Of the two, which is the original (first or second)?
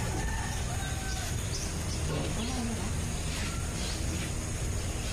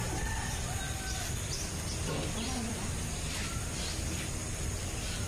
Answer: first